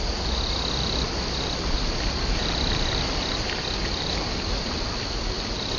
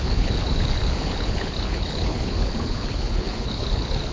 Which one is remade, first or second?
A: second